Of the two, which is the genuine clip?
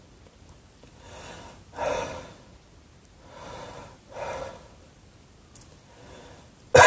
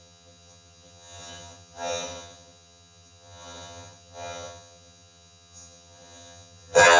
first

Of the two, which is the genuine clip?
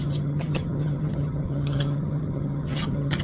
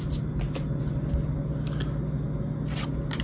second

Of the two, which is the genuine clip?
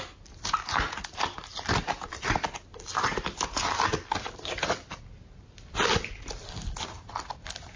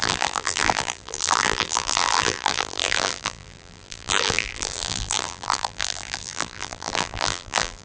first